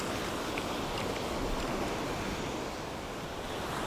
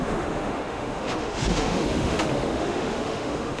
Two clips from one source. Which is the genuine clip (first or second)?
first